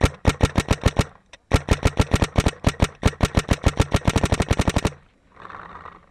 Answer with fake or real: real